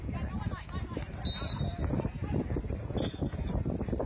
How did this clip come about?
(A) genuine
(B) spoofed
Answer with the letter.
A